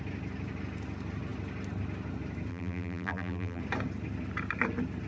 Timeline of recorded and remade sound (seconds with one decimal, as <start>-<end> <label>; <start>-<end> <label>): 0.0-2.5 recorded; 2.5-3.6 remade; 3.6-5.1 recorded